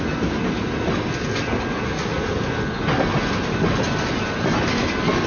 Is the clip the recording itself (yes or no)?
yes